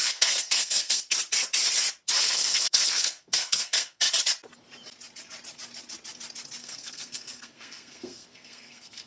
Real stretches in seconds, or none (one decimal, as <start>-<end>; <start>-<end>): 1.0-2.2; 4.0-6.6